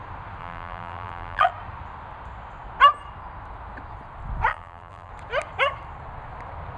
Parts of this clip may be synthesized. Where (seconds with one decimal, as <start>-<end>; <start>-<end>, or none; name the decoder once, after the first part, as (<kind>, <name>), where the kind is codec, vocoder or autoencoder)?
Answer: 0.4-1.5 (vocoder, BigVGAN v2); 4.5-5.1